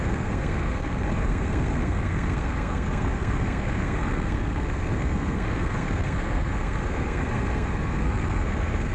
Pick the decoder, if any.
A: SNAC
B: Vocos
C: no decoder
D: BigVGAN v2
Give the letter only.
A